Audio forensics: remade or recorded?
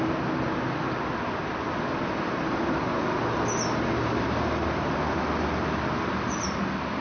recorded